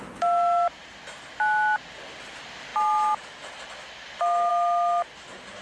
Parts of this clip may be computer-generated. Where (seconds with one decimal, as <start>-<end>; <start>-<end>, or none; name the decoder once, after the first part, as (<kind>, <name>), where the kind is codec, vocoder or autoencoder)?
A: none